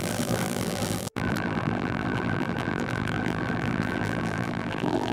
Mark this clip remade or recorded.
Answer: remade